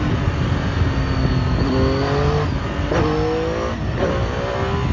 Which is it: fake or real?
real